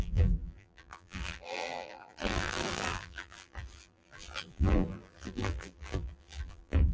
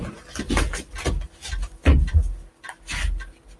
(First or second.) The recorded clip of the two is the second